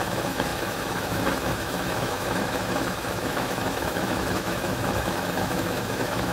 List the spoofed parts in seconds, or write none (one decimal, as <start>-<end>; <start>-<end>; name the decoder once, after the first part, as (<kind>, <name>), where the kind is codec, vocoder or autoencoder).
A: 0.0-6.3 (autoencoder, DAC-VAE)